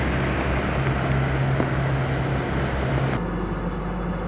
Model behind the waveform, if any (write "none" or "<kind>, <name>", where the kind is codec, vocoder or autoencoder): none